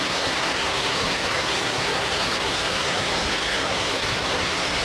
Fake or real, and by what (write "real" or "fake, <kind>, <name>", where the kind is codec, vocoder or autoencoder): fake, codec, SNAC